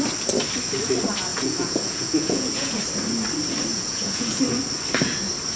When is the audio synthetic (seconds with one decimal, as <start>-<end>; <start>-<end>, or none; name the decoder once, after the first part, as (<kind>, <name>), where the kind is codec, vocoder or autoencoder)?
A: 1.3-2.8 (vocoder, Vocos); 3.7-4.4